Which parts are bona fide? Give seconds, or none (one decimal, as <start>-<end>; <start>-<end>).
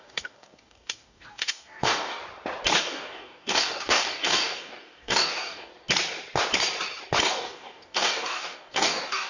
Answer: 2.2-2.8; 5.7-7.2